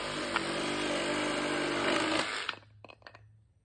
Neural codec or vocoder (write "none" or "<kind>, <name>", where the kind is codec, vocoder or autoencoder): none